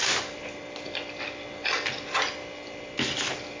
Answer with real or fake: real